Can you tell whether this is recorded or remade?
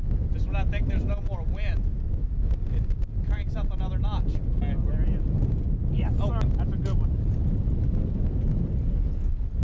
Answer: recorded